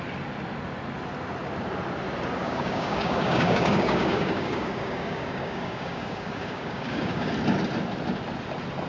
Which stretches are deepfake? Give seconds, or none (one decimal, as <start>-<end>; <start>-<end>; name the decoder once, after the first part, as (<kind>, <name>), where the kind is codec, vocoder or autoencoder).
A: 2.4-7.3 (codec, DAC)